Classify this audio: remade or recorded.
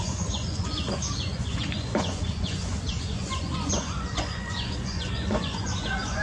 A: remade